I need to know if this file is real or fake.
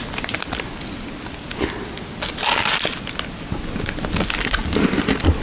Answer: real